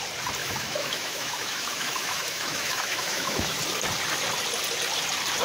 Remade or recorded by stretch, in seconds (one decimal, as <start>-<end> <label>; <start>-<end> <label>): 0.0-0.4 recorded; 0.4-3.6 remade; 3.6-5.4 recorded